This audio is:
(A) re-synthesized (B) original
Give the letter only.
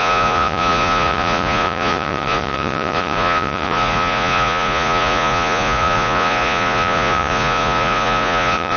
A